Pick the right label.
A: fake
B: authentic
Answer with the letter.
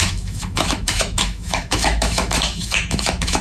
A